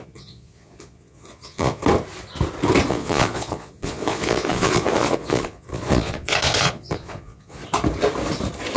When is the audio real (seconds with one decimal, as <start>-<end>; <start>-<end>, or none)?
1.8-2.9; 7.6-8.8